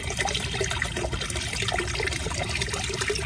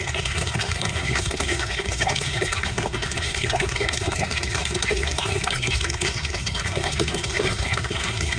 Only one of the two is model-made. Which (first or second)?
second